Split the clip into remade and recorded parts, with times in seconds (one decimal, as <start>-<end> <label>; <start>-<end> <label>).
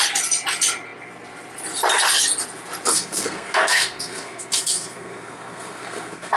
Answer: 0.0-2.9 recorded; 2.9-6.4 remade